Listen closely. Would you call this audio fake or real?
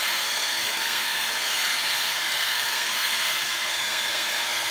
fake